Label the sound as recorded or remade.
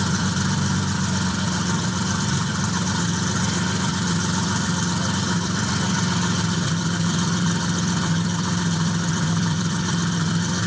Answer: remade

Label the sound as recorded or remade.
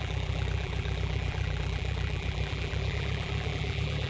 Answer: remade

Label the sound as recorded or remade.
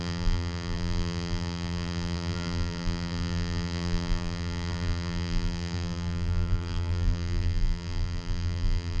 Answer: remade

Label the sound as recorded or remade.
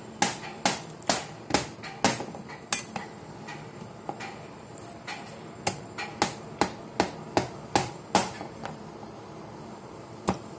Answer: recorded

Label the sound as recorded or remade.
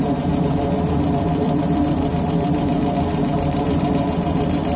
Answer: remade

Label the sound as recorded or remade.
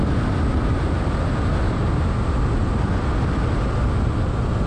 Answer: recorded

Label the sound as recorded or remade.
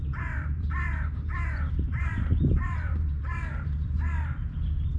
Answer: remade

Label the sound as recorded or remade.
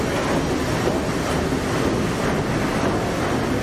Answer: recorded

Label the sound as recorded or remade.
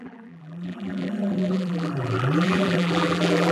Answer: remade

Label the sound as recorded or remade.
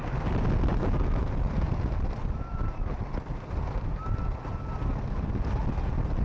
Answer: recorded